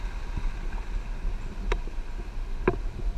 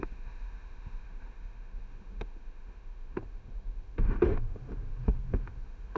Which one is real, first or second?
first